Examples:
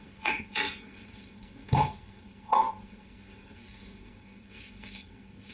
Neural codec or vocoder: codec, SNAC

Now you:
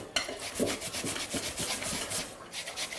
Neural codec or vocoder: none